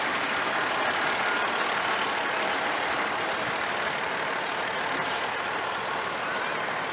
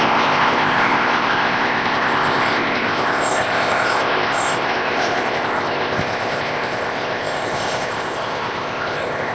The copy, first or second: second